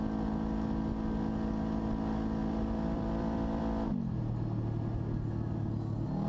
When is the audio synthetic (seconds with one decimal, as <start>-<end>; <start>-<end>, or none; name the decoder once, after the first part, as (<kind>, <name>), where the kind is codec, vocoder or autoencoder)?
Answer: 2.4-3.6 (vocoder, BigVGAN v2)